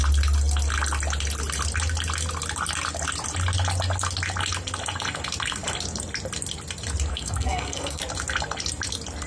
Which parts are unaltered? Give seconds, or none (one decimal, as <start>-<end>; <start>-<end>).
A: 0.0-7.1; 8.0-9.3

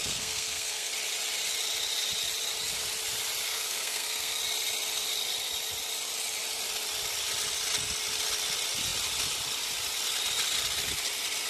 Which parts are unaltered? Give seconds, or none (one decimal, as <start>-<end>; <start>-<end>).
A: 0.9-3.5; 4.4-11.5

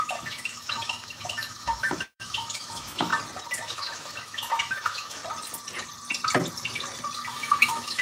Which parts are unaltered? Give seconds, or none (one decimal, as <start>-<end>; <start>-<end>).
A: 3.1-3.6; 5.2-7.3

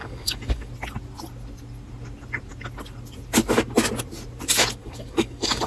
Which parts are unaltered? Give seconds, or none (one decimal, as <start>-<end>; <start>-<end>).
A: 0.7-4.8

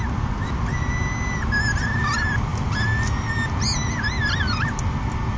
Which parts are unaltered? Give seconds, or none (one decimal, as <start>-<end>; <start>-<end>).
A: 0.0-5.4

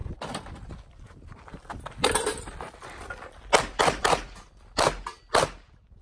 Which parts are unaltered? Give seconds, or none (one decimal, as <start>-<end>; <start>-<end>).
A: 0.0-3.6